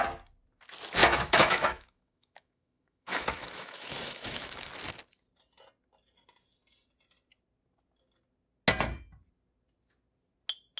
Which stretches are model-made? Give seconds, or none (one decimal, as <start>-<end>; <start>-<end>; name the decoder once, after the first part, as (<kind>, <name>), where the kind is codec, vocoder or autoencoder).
1.0-4.7 (autoencoder, DAC-VAE)